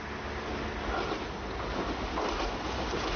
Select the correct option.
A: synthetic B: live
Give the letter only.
B